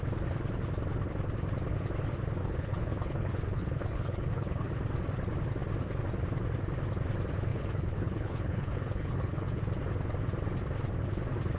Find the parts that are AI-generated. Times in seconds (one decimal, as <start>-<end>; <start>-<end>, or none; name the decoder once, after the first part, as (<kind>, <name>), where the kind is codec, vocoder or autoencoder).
2.4-4.7 (codec, HILCodec); 7.5-9.6